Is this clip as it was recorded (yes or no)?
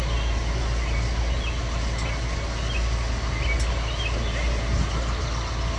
yes